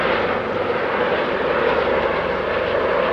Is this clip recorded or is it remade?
recorded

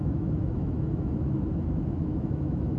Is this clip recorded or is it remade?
remade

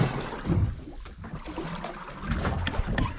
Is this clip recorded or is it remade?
recorded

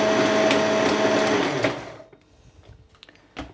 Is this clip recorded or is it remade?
recorded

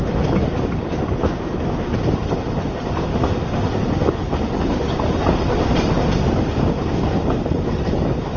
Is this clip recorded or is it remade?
recorded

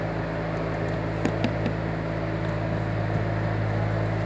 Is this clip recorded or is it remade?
recorded